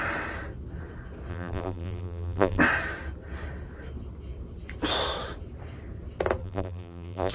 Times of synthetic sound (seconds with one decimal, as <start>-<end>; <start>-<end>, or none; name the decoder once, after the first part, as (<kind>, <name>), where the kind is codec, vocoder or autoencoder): 1.3-2.6 (vocoder, BigVGAN v2); 6.4-7.3